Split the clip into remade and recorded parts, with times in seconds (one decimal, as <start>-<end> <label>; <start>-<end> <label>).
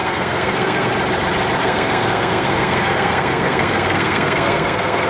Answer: 0.0-0.9 remade; 0.9-1.6 recorded; 1.6-5.1 remade